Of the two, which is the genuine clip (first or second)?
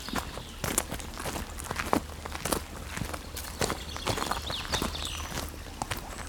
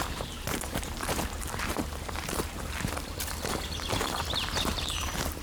first